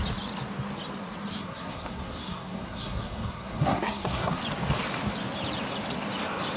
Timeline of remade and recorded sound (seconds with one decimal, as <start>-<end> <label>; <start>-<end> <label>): 0.0-1.3 recorded; 1.3-4.4 remade; 4.4-6.6 recorded

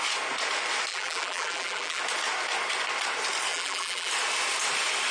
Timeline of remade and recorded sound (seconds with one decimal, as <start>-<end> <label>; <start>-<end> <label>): 0.0-0.9 recorded; 0.9-2.0 remade; 2.0-3.5 recorded; 3.5-4.1 remade; 4.1-5.1 recorded